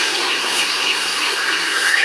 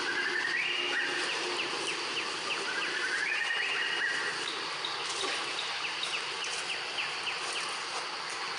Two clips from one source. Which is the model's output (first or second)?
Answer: first